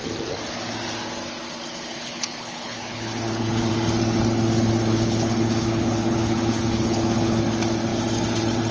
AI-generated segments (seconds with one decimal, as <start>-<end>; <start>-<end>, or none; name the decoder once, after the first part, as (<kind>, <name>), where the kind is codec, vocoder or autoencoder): 2.0-3.7 (codec, HILCodec); 4.9-7.4